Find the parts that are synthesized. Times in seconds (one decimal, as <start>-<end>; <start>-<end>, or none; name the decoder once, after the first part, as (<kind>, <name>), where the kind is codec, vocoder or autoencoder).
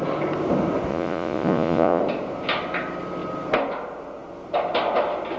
0.9-2.0 (vocoder, Vocos)